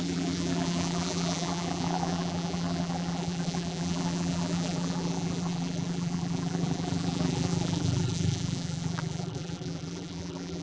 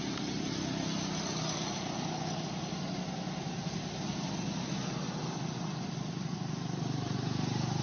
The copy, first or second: first